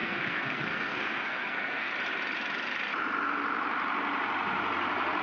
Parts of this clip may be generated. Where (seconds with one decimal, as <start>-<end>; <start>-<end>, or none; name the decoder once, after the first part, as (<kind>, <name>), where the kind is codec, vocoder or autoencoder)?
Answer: 0.0-1.9 (codec, SNAC)